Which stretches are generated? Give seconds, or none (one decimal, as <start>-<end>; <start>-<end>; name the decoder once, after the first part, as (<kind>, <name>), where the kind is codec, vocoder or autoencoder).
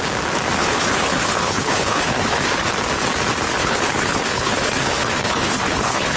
0.6-2.7 (codec, HILCodec); 3.6-6.2